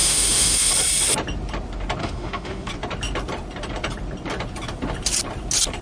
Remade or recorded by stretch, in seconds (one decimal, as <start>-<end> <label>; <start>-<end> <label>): 0.0-0.7 remade; 0.7-2.0 recorded; 2.0-2.7 remade; 2.7-5.8 recorded